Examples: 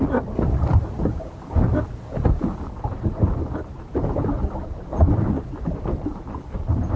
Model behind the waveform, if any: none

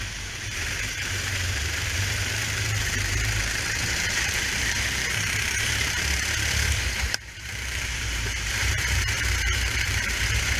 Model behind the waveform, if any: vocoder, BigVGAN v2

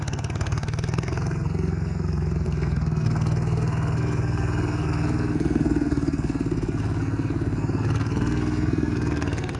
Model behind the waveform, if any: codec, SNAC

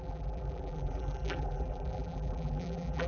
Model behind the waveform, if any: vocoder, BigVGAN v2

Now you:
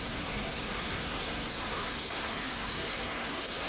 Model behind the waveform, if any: codec, SNAC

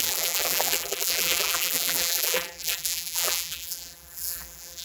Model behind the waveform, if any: vocoder, BigVGAN v2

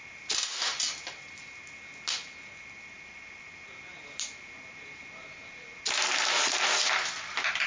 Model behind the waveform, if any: none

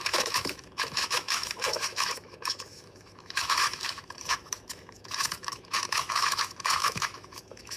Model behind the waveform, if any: autoencoder, DAC-VAE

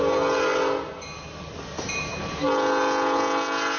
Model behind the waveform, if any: none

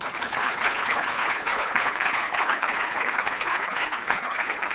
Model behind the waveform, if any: codec, HILCodec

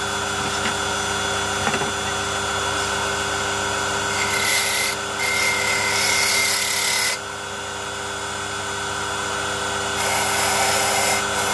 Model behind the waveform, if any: none